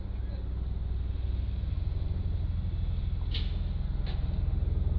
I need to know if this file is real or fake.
real